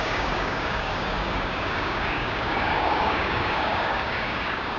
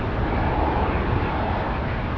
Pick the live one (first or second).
second